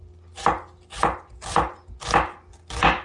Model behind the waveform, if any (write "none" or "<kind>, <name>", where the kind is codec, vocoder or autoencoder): none